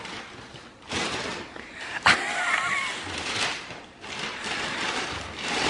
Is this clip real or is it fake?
real